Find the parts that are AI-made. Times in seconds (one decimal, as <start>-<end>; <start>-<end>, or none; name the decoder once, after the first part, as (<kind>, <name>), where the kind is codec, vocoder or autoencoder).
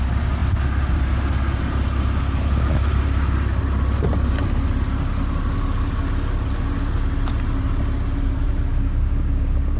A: 8.7-9.8 (codec, DAC)